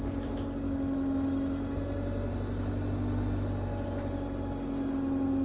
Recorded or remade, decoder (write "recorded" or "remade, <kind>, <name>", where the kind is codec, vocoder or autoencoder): recorded